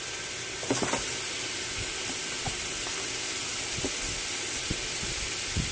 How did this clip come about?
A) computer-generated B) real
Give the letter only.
B